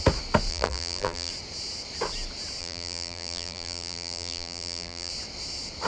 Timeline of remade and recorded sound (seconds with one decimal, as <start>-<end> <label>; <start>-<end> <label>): 0.0-0.5 recorded; 0.5-1.3 remade; 1.3-2.6 recorded; 2.6-5.1 remade; 5.1-5.9 recorded